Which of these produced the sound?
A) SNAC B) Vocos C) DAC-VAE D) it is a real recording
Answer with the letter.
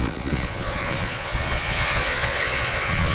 B